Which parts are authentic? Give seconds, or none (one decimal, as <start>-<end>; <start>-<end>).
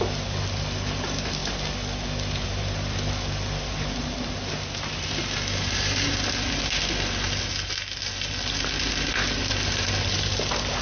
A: 0.0-10.8